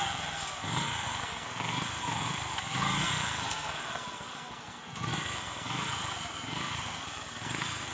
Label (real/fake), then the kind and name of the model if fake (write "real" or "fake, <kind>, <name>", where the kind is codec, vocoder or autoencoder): fake, codec, SNAC